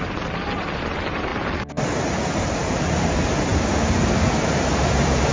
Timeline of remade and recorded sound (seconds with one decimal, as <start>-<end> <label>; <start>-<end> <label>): 0.0-1.3 remade; 1.3-2.4 recorded; 2.4-5.3 remade